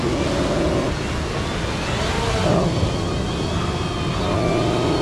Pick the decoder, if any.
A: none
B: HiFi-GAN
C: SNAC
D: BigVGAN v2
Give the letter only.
A